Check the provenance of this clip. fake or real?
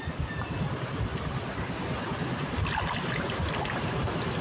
real